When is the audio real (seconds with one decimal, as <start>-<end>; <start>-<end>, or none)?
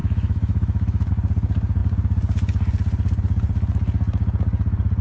1.1-5.0